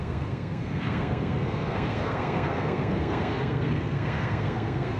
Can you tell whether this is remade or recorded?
remade